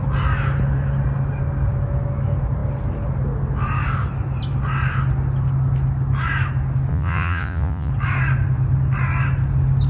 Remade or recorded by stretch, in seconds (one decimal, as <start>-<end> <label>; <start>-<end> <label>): 0.0-6.9 recorded; 6.9-7.9 remade; 7.9-9.9 recorded